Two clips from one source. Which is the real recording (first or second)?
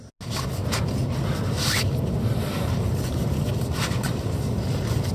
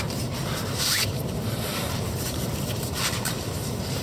first